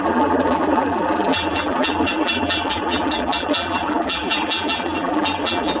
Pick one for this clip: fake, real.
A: fake